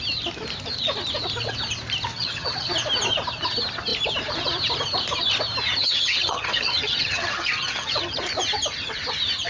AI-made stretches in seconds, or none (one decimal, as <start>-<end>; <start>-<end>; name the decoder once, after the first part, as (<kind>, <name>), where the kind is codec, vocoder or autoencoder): 2.1-2.7 (vocoder, HiFi-GAN); 5.8-8.2